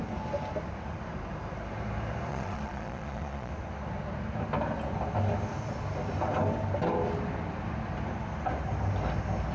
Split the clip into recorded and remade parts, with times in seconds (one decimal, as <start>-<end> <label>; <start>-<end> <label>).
0.0-2.3 recorded; 2.3-3.5 remade; 3.5-9.5 recorded